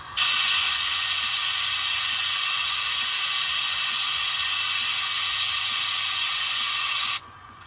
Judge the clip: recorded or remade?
remade